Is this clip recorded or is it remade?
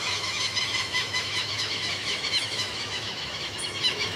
remade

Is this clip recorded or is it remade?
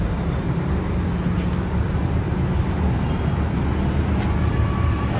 recorded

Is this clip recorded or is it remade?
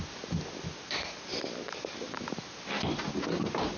recorded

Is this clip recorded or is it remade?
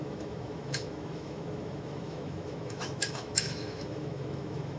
remade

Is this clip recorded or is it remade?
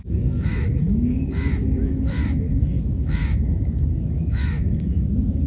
remade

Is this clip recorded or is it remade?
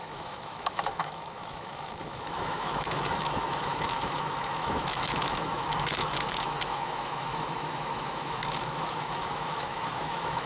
remade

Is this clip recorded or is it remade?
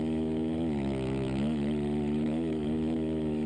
remade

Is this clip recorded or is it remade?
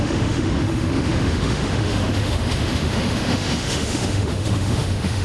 remade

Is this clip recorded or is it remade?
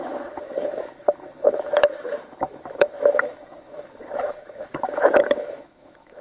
remade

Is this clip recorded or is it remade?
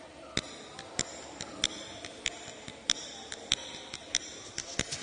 recorded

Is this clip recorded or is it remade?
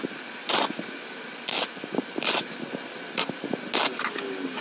recorded